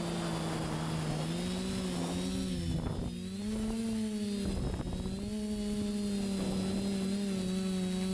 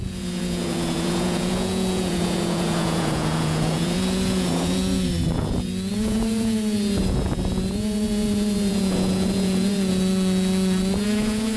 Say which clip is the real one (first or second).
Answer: first